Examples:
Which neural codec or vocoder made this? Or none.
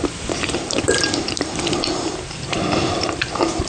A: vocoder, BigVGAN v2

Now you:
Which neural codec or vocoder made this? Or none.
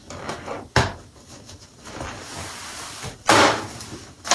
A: none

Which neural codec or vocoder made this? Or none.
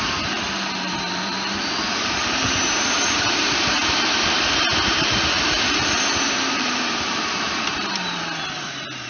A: vocoder, BigVGAN v2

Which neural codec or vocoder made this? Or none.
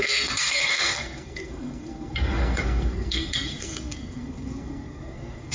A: codec, SNAC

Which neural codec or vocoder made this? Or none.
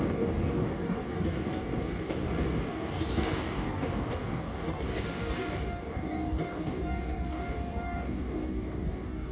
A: codec, DAC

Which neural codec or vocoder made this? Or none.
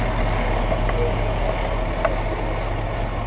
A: none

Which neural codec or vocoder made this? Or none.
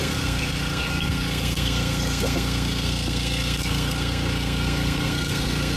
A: codec, SNAC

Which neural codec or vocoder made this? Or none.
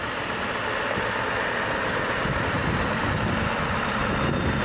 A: none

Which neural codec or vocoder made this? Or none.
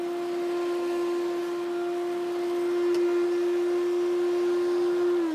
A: none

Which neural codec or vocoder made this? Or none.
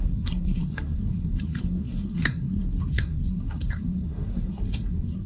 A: codec, SNAC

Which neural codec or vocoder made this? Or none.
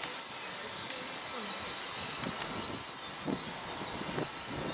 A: none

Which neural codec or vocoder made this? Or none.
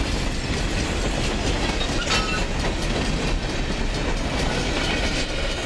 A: none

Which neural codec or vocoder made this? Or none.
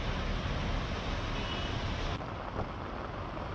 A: none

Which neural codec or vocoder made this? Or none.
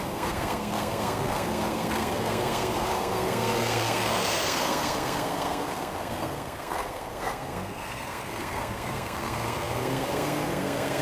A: codec, SNAC